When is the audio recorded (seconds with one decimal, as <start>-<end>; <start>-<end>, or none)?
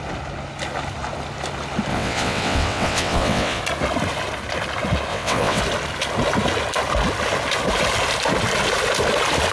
0.0-1.9; 3.6-5.1; 5.6-9.5